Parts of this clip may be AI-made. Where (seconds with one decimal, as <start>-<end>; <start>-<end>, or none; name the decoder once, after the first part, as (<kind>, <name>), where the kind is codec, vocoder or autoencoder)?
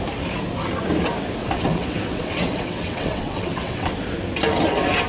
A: 1.4-3.9 (vocoder, WaveNeXt)